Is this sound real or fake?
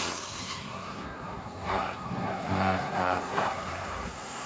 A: fake